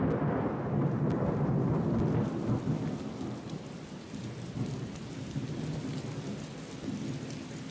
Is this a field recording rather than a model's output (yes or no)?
yes